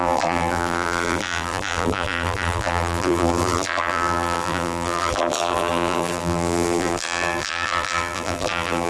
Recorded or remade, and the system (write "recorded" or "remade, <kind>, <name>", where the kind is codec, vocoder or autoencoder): remade, vocoder, BigVGAN v2